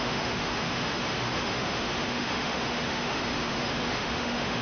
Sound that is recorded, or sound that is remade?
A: remade